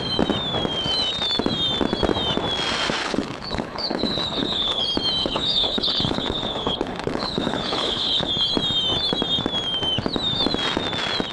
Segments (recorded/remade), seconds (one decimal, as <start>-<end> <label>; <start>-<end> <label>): 0.0-3.0 recorded; 3.0-4.8 remade; 4.8-5.2 recorded; 5.2-8.3 remade; 8.3-11.3 recorded